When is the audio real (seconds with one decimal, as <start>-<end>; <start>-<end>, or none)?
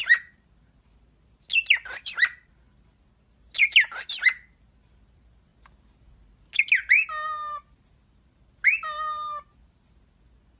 0.0-10.6